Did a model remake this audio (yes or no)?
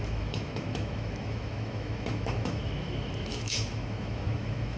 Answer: yes